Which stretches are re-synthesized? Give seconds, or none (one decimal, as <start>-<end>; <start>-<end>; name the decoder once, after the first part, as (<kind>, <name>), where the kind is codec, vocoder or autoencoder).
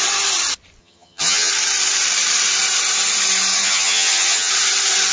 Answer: 0.8-1.5 (vocoder, HiFi-GAN); 3.5-4.5